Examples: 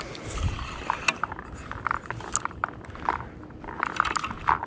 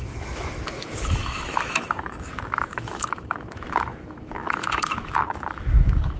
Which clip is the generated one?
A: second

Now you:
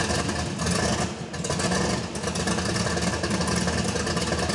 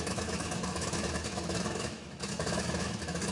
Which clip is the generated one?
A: second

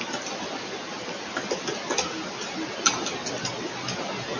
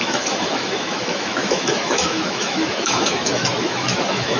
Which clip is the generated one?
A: second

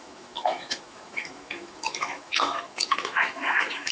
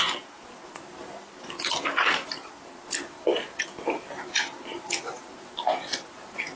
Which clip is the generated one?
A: first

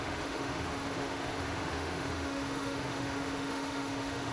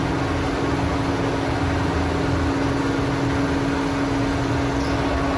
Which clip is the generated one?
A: first